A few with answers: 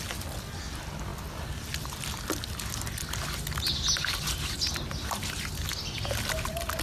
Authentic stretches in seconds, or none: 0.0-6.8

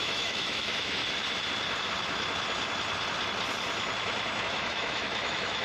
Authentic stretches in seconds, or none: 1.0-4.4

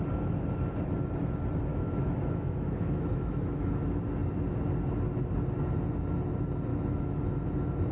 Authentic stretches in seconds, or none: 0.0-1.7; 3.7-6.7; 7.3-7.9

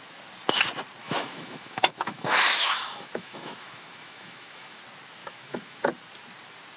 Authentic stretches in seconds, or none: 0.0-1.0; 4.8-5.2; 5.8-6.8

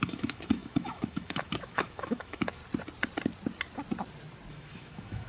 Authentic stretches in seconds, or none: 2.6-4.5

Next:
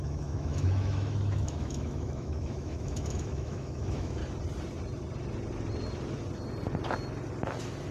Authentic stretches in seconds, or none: 4.2-7.9

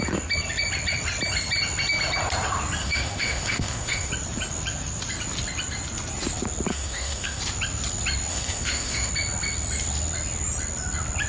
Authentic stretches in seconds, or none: 0.0-2.8; 4.1-6.7; 7.4-8.3; 9.1-11.3

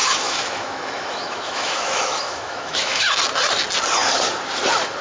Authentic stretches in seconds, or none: 3.0-5.0